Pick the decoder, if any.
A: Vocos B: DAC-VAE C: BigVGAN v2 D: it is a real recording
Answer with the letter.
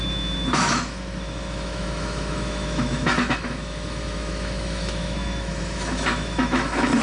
B